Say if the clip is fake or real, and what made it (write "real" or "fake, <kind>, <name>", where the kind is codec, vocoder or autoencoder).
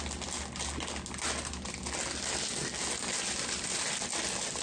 real